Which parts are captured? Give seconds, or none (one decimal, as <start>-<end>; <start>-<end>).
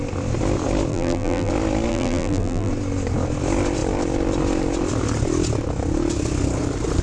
0.0-0.9; 1.5-1.9; 2.7-7.0